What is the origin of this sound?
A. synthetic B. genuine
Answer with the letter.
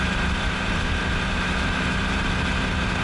A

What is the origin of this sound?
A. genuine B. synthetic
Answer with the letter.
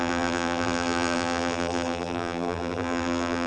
B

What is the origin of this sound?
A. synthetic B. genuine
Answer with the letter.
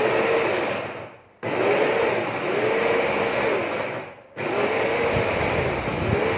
B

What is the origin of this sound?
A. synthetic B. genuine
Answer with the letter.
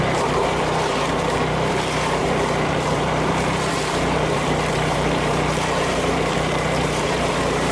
A